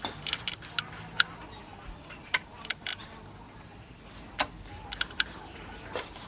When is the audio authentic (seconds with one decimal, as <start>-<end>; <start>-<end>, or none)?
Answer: 0.0-6.3